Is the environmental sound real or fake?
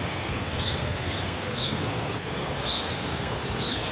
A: fake